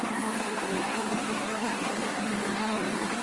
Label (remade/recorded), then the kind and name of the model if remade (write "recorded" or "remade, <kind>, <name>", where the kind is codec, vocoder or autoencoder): remade, codec, SNAC